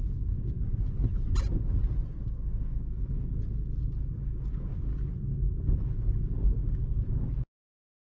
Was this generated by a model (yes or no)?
no